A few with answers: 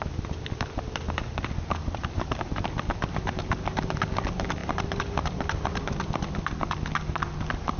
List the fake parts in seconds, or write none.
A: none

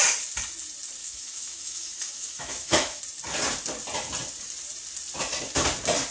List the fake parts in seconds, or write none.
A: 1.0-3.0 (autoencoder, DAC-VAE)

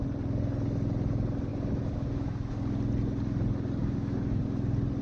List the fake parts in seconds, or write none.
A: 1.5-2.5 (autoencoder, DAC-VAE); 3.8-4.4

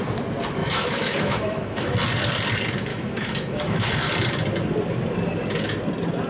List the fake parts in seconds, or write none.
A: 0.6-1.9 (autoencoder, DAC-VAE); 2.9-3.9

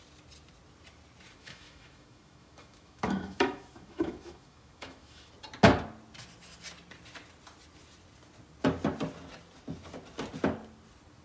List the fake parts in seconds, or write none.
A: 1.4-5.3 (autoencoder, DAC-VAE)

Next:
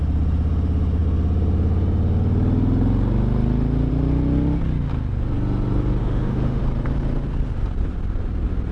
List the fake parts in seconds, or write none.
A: 6.0-6.6 (autoencoder, DAC-VAE)

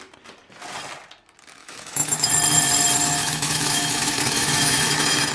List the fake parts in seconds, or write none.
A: 1.6-2.3 (autoencoder, DAC-VAE); 3.2-5.3

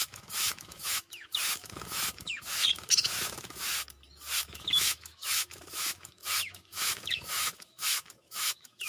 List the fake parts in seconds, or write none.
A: 0.0-3.7 (autoencoder, DAC-VAE); 4.4-8.9